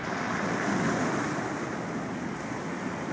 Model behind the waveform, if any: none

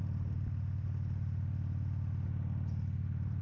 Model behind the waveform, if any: none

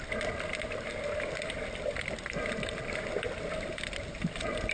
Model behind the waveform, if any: none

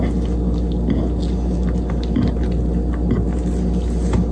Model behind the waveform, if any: none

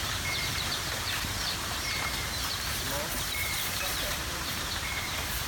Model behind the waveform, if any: vocoder, BigVGAN v2